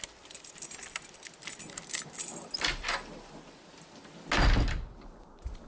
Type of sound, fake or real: real